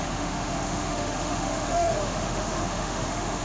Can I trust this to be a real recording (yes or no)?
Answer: no